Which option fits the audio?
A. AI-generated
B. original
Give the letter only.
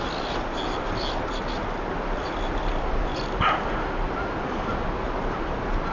B